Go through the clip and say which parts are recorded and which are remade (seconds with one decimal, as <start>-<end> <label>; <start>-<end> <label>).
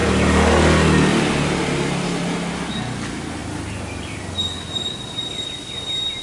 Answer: 0.0-3.4 recorded; 3.4-4.2 remade; 4.2-6.2 recorded